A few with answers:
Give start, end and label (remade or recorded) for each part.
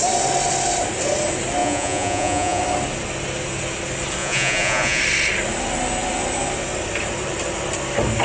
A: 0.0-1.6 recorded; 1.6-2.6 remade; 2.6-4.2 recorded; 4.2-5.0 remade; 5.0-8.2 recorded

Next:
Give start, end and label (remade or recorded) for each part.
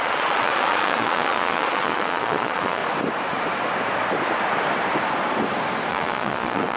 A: 0.0-2.8 remade; 2.8-5.9 recorded; 5.9-6.8 remade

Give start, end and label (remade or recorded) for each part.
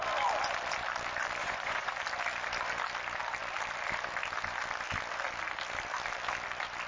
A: 0.0-1.4 recorded; 1.4-1.9 remade; 1.9-6.9 recorded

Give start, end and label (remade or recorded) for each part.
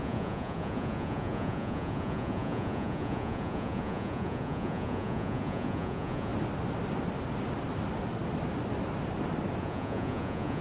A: 0.0-6.3 remade; 6.3-9.6 recorded; 9.6-10.6 remade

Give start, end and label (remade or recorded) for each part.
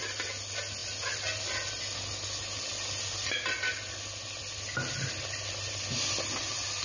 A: 0.0-6.8 recorded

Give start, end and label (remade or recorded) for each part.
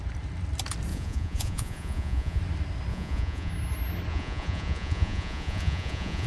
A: 0.0-0.9 recorded; 0.9-2.4 remade; 2.4-2.9 recorded; 2.9-3.5 remade; 3.5-4.1 recorded; 4.1-6.3 remade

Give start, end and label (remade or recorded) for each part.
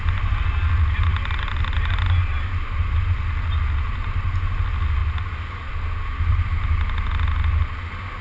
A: 0.0-8.2 recorded